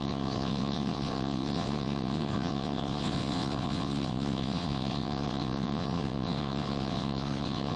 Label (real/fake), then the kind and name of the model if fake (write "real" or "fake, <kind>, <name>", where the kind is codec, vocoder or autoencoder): fake, vocoder, WaveNeXt